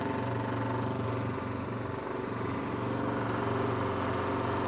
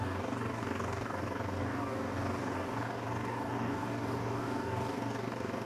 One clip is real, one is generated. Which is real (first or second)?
first